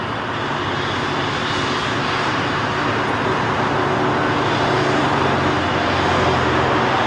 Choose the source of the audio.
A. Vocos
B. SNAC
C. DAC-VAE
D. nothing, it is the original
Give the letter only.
D